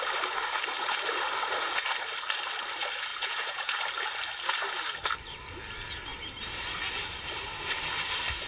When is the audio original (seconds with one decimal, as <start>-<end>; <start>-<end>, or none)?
0.0-3.1; 3.8-8.5